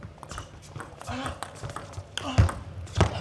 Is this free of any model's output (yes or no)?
yes